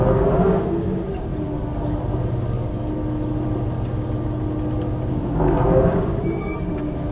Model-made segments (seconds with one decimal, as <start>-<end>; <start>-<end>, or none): 0.0-1.3; 2.3-2.7; 5.1-7.1